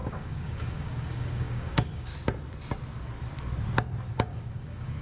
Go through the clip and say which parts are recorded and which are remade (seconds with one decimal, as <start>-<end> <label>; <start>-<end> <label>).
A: 0.0-2.1 remade; 2.1-4.1 recorded; 4.1-5.0 remade